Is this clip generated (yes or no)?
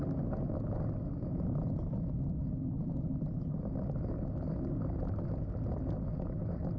no